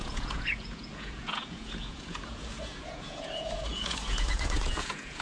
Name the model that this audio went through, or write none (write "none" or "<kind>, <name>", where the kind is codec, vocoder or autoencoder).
vocoder, Vocos